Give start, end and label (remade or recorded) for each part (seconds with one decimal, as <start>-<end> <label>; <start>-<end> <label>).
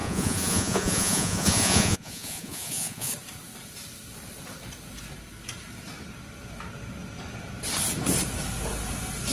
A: 0.0-3.1 remade; 3.1-9.3 recorded